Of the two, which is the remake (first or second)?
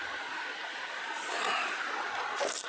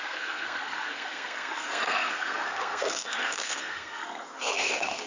second